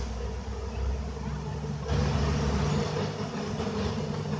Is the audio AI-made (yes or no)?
no